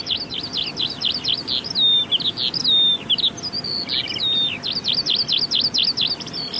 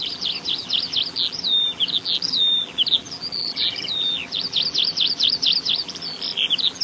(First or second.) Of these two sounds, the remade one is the second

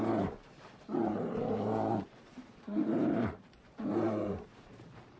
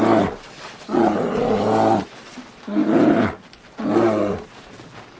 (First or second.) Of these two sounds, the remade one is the first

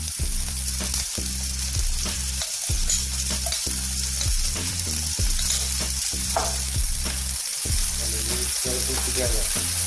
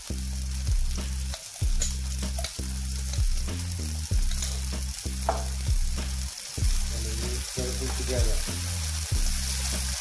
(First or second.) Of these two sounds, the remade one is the first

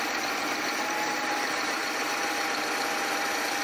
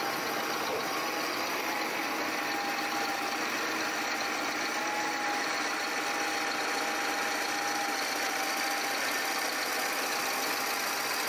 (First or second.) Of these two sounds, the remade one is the first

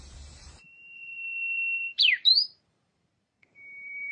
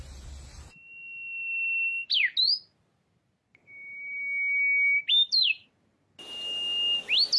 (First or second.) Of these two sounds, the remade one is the first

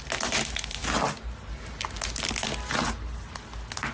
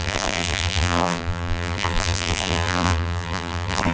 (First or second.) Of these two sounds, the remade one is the second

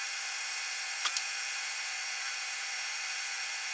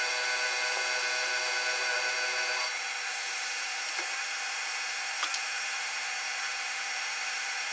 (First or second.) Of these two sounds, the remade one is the second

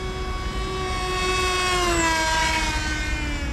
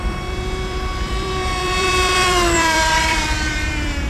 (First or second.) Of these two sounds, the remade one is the second